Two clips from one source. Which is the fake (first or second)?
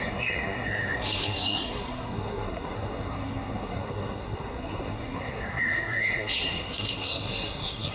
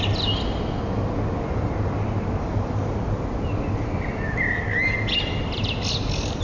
first